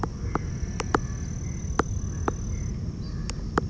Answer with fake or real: real